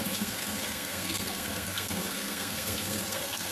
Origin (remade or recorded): remade